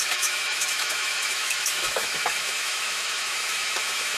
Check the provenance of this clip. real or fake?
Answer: fake